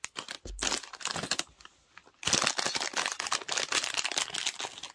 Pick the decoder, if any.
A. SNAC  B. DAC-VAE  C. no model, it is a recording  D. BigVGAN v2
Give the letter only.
C